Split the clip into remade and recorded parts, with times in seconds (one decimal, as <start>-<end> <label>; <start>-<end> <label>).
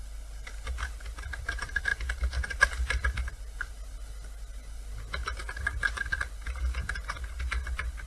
0.0-8.1 recorded